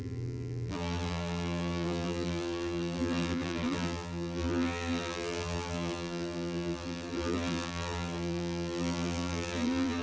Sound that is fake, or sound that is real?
fake